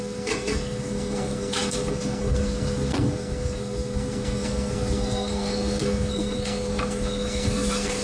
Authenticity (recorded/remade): remade